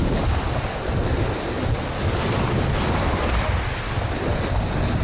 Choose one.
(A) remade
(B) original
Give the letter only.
B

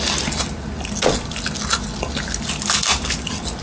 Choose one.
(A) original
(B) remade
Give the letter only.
A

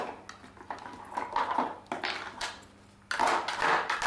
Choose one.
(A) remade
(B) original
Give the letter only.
B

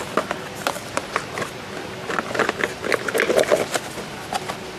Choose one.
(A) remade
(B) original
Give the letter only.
B